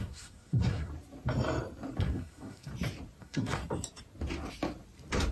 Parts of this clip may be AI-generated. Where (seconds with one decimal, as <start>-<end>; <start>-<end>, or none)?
0.0-0.9; 2.0-2.7; 3.2-3.6